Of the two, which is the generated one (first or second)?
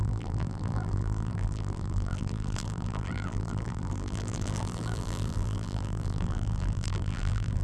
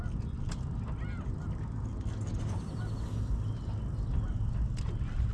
first